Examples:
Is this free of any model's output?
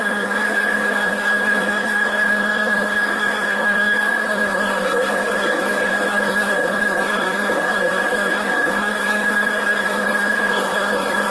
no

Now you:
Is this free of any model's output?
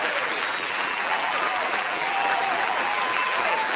no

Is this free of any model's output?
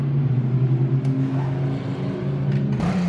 yes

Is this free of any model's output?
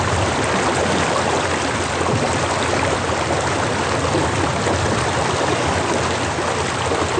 yes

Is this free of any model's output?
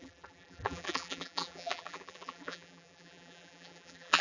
no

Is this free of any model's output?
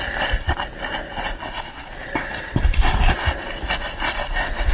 yes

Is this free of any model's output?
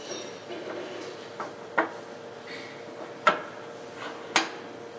yes